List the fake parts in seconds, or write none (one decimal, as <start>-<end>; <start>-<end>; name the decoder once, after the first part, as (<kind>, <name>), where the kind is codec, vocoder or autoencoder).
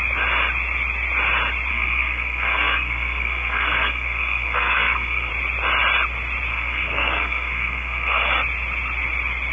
1.7-5.3 (codec, SNAC); 6.5-8.3